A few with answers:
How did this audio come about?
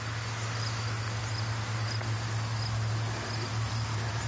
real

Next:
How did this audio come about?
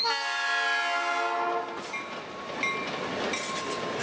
real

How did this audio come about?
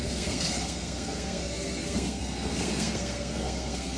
fake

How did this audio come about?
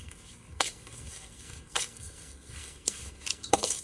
fake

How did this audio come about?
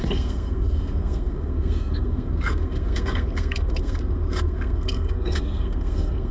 fake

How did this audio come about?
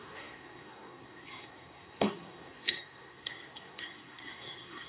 fake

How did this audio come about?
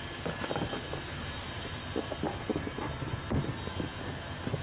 real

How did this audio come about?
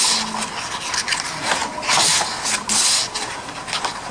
real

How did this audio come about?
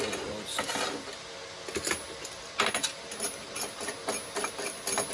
real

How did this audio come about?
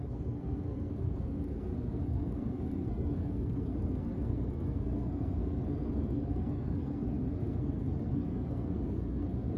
fake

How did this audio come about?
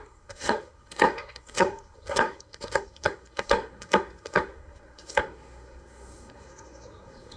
fake